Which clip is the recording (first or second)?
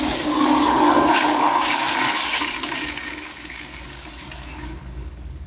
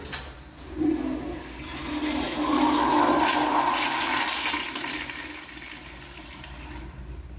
second